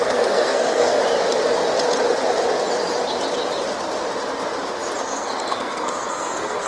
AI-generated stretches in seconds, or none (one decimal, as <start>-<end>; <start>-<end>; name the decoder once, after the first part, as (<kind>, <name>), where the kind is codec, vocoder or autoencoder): 0.0-1.0 (codec, SNAC); 5.0-6.7